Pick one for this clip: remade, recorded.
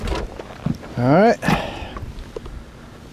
recorded